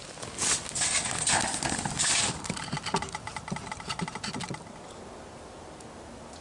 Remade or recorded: recorded